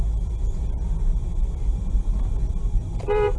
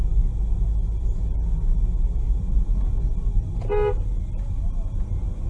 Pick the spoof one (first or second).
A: first